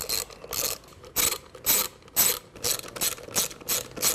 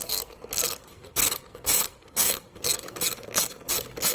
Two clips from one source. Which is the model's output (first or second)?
second